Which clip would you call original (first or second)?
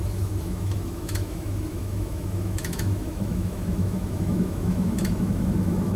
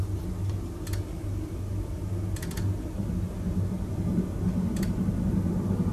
second